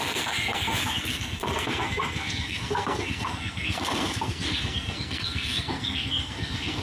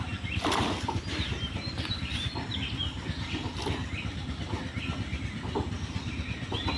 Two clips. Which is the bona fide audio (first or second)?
second